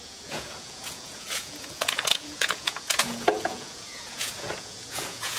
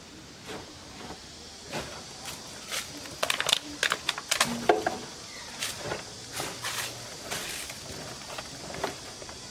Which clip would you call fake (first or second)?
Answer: first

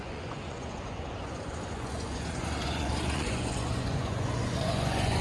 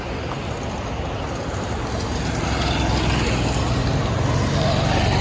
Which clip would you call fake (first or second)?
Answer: first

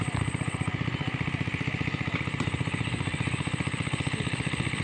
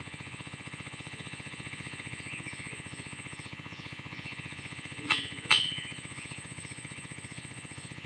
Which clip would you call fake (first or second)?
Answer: second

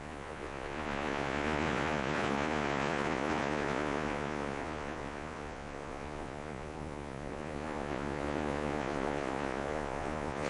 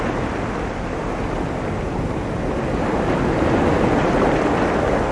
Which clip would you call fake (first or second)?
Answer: first